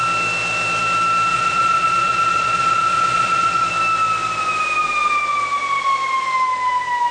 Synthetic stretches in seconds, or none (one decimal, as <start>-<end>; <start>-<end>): 1.3-3.7